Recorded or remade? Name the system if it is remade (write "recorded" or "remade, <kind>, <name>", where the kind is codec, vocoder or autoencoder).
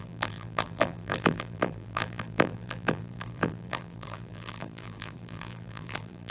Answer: remade, vocoder, BigVGAN v2